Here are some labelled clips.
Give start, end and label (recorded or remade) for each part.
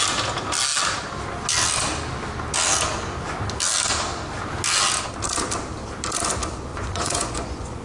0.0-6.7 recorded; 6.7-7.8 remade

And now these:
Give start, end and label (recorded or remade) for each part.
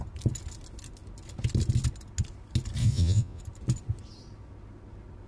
0.0-2.8 recorded; 2.8-3.4 remade; 3.4-5.3 recorded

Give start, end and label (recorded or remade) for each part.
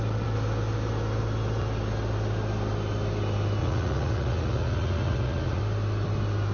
0.0-3.6 recorded; 3.6-5.6 remade; 5.6-6.5 recorded